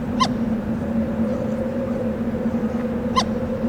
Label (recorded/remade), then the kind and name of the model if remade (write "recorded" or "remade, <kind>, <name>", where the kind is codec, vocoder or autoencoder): recorded